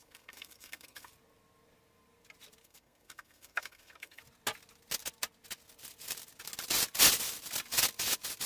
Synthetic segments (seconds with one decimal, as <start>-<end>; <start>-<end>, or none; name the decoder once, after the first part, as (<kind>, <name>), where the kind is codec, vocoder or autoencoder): 0.0-1.1 (codec, SNAC); 2.6-4.2